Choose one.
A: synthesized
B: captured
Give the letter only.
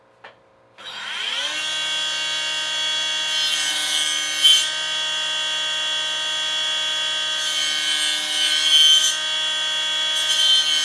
B